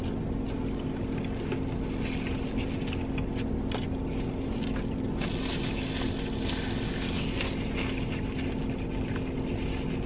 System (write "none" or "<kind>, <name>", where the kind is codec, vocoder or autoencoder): none